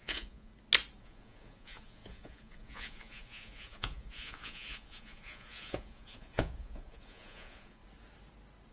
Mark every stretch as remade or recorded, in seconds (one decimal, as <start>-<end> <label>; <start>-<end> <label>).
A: 0.0-0.5 remade; 0.5-1.0 recorded; 1.0-7.8 remade; 7.8-8.7 recorded